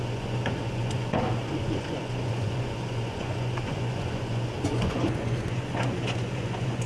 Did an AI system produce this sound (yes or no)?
yes